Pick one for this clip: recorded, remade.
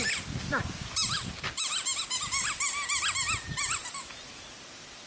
recorded